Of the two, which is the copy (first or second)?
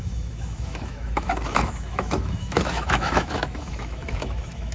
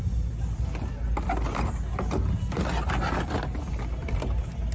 first